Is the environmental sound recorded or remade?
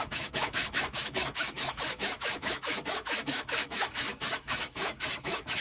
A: remade